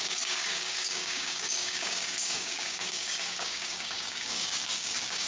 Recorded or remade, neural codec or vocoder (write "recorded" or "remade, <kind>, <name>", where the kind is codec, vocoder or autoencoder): remade, codec, DAC